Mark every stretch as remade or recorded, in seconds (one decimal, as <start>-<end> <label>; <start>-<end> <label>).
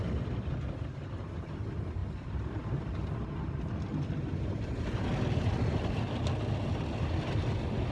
0.0-7.9 recorded